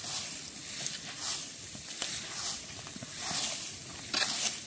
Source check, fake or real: real